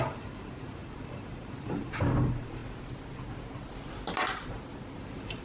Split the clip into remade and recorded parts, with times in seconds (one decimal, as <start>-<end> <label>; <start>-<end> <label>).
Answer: 0.0-2.6 remade; 2.6-5.0 recorded; 5.0-5.4 remade